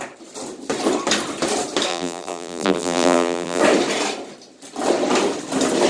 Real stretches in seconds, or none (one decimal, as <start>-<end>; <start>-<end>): 0.0-1.9; 3.6-5.9